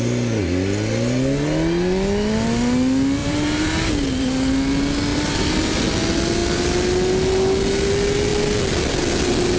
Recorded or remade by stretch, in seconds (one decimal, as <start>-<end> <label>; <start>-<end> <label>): 0.0-3.2 recorded; 3.2-3.9 remade; 3.9-5.1 recorded; 5.1-5.8 remade; 5.8-9.6 recorded